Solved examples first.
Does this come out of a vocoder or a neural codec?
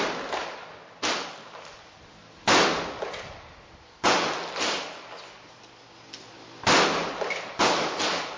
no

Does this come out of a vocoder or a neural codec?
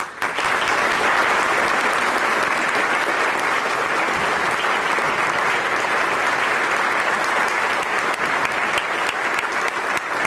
no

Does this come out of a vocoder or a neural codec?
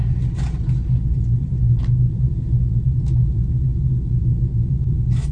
yes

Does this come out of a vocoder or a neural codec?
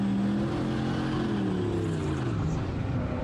no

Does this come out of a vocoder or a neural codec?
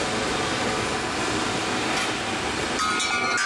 no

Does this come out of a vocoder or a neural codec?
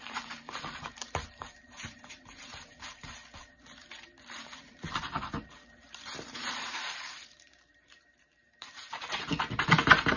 yes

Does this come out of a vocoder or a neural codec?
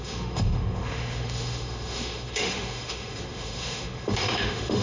yes